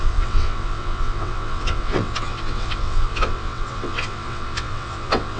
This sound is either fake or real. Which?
fake